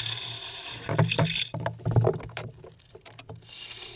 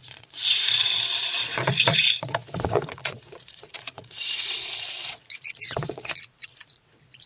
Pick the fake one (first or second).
second